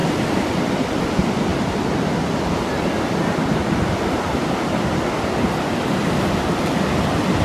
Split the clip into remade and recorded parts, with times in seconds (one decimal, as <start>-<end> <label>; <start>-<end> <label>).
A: 0.0-7.4 recorded